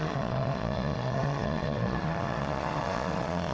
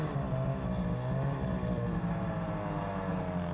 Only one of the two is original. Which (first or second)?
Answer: second